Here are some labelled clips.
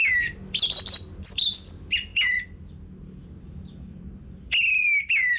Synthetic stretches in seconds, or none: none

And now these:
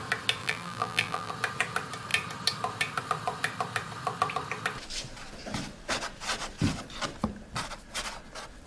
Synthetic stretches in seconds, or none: 0.4-1.3

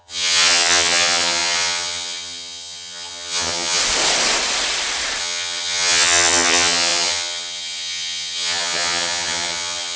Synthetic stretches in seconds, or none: 0.0-3.8; 5.2-10.0

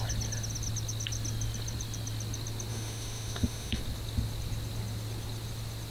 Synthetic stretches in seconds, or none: 2.7-3.8

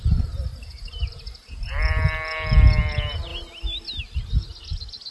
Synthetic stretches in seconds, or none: none

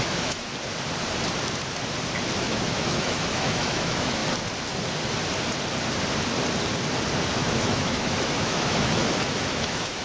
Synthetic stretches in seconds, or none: 0.0-0.5; 2.4-4.2; 7.4-9.0; 9.5-10.0